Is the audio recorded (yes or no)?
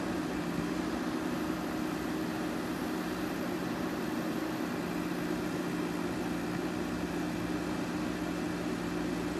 yes